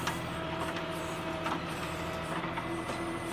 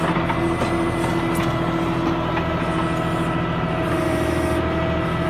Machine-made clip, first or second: first